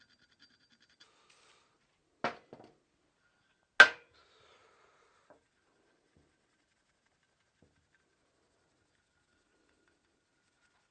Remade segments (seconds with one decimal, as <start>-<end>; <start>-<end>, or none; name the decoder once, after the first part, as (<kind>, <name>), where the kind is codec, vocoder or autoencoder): none